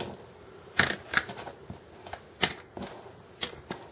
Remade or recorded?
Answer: recorded